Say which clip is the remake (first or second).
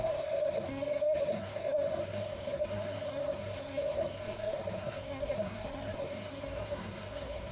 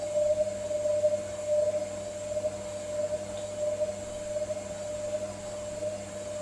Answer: first